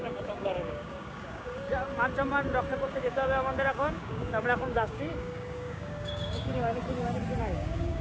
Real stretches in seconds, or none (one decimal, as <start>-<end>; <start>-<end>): 1.7-2.9; 6.7-7.4